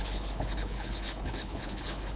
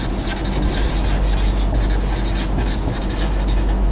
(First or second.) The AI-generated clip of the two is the first